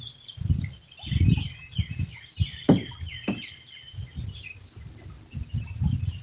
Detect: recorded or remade recorded